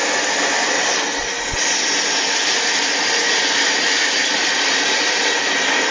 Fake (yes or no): no